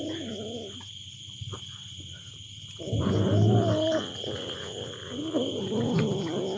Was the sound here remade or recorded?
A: recorded